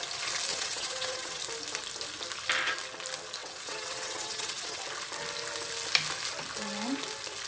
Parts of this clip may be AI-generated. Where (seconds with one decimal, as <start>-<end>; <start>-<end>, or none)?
0.5-1.4; 3.4-4.8